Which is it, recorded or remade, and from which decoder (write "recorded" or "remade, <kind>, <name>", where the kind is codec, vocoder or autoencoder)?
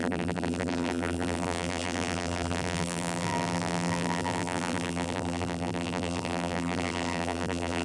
remade, vocoder, BigVGAN v2